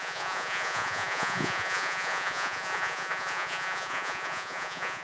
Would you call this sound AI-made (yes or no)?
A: yes